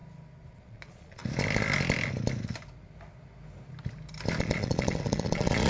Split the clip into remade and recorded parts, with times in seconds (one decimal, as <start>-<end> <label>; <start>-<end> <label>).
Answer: 0.0-0.5 recorded; 0.5-1.2 remade; 1.2-4.4 recorded; 4.4-5.7 remade